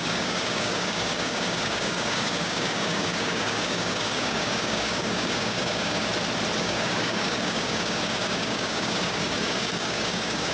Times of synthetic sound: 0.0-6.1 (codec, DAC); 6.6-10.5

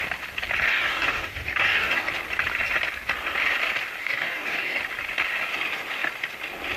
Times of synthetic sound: 0.7-2.1 (codec, DAC); 4.0-4.8

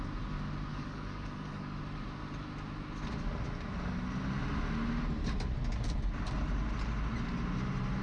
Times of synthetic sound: 0.7-1.8 (codec, DAC)

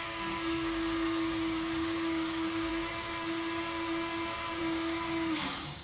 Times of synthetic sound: 0.0-2.7 (codec, DAC); 4.6-5.8